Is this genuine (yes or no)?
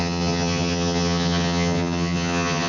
no